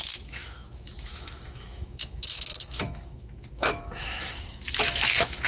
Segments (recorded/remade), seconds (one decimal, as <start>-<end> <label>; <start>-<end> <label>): 0.0-5.5 remade